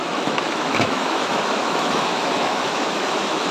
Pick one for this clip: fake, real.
fake